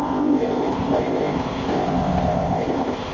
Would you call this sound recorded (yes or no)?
no